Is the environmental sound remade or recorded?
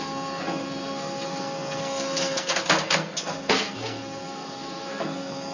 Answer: remade